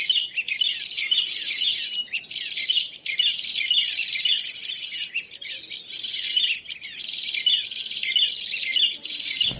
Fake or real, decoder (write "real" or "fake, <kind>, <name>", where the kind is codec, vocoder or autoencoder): real